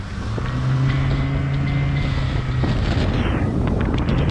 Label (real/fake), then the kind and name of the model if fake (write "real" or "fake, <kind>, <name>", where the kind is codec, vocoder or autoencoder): real